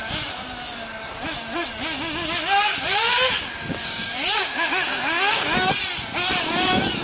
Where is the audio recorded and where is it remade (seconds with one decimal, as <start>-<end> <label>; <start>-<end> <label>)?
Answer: 0.0-2.7 recorded; 2.7-5.7 remade; 5.7-7.0 recorded

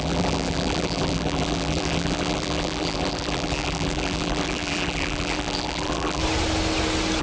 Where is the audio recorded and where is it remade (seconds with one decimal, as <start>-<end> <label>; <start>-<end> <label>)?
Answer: 0.0-6.2 remade; 6.2-7.2 recorded

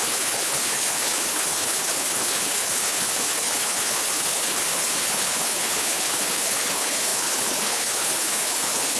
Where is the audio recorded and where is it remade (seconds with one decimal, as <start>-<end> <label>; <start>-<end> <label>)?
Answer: 0.0-9.0 remade

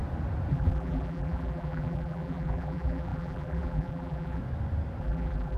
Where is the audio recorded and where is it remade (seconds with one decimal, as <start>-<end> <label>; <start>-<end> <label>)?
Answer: 0.0-0.5 recorded; 0.5-4.4 remade; 4.4-5.0 recorded; 5.0-5.6 remade

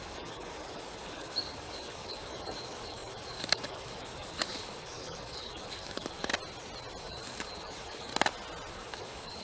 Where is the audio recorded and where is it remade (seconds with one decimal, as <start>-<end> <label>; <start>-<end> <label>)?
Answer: 0.0-6.3 remade; 6.3-7.0 recorded; 7.0-8.1 remade; 8.1-8.7 recorded; 8.7-9.4 remade

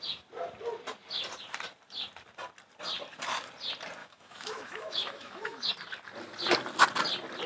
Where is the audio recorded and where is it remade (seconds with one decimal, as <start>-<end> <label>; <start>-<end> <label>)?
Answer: 0.0-4.0 recorded; 4.0-5.7 remade; 5.7-7.5 recorded